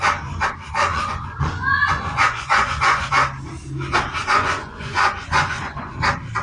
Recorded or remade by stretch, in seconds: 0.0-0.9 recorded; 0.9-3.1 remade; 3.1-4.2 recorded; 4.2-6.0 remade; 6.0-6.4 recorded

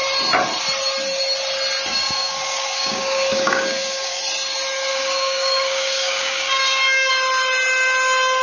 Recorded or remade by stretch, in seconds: 0.0-1.9 recorded; 1.9-4.2 remade; 4.2-4.9 recorded; 4.9-7.1 remade; 7.1-8.4 recorded

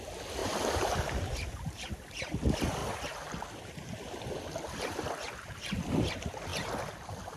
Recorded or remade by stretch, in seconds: 0.0-2.8 remade; 2.8-3.7 recorded; 3.7-7.4 remade

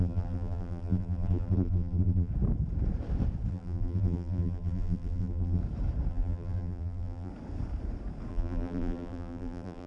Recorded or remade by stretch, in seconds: 0.0-2.3 remade; 2.3-3.5 recorded; 3.5-5.6 remade; 5.6-6.1 recorded; 6.1-7.3 remade; 7.3-8.3 recorded; 8.3-9.9 remade

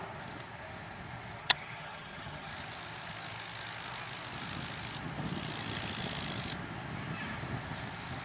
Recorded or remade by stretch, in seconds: 0.0-1.4 recorded; 1.4-2.5 remade; 2.5-8.2 recorded

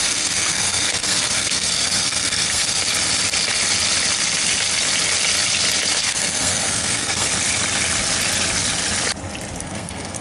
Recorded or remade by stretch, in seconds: 0.0-2.8 remade; 2.8-6.0 recorded; 6.0-7.3 remade; 7.3-9.6 recorded; 9.6-10.2 remade

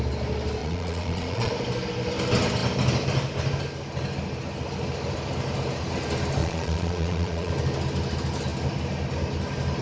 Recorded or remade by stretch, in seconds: 0.0-0.6 recorded; 0.6-1.5 remade; 1.5-6.4 recorded; 6.4-7.5 remade; 7.5-9.8 recorded